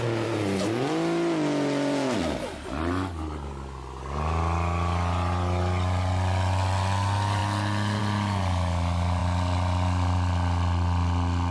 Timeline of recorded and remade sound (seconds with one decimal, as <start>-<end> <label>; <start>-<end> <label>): 0.0-11.5 recorded